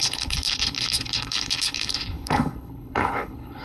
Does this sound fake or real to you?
fake